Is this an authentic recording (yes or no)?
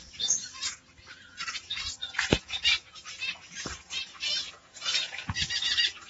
no